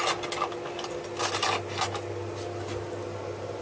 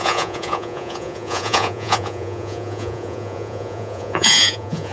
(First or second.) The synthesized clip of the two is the second